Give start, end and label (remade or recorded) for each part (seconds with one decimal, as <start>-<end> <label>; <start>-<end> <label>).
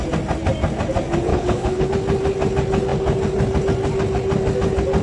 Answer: 0.0-1.3 recorded; 1.3-1.9 remade; 1.9-5.0 recorded